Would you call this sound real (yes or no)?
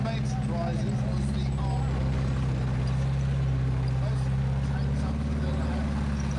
yes